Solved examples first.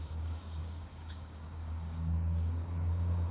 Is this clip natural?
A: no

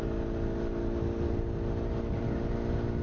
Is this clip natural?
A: yes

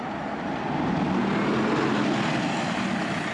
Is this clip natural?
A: yes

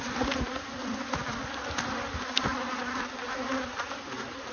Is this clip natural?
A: yes